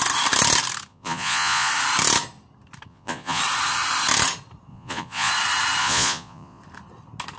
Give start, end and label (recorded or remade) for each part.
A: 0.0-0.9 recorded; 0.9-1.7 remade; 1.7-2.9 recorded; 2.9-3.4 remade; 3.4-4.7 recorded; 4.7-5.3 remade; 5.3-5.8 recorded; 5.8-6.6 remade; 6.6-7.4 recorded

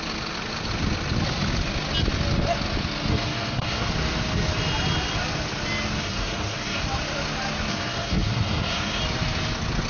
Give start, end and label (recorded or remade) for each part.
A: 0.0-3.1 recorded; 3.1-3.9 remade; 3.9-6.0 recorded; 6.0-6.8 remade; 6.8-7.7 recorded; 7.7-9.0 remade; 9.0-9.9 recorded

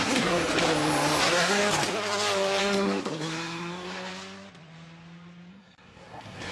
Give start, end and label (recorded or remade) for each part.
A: 0.0-0.4 remade; 0.4-1.2 recorded; 1.2-1.6 remade; 1.6-2.6 recorded; 2.6-4.1 remade; 4.1-5.5 recorded; 5.5-6.5 remade

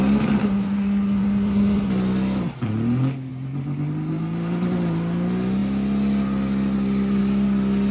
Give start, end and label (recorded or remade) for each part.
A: 0.0-0.4 recorded; 0.4-1.9 remade; 1.9-7.9 recorded